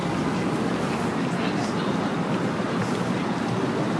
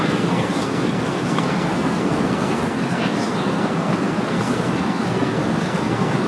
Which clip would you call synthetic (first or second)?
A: second